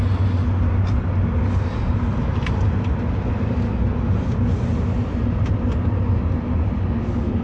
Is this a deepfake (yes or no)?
no